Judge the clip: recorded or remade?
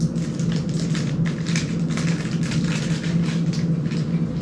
recorded